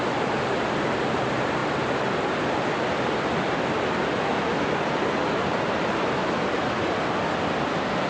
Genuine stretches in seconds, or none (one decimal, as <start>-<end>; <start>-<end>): 0.0-8.1